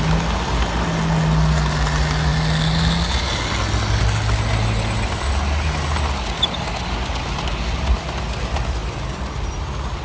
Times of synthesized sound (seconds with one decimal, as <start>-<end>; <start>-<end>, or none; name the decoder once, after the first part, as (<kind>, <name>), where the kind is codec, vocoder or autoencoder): none